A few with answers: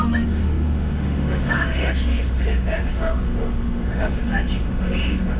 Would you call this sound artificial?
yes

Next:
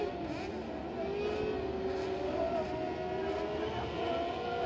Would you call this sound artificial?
no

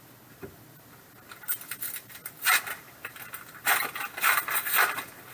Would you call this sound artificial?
no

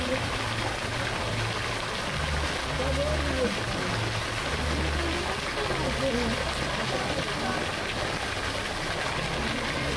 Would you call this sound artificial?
no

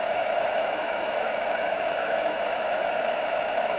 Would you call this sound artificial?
yes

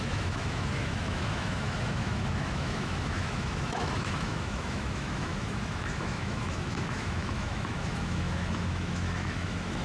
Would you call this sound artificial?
yes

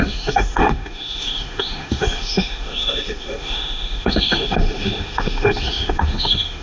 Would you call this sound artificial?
yes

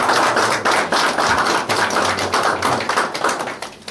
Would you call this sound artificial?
no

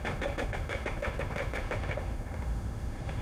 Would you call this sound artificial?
yes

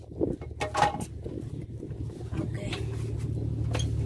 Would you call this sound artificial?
no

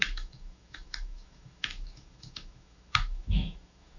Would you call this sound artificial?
yes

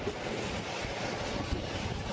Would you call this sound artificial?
no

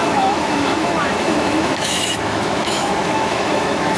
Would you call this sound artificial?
yes